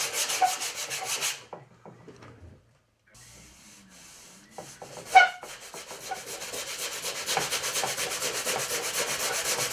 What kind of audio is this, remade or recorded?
recorded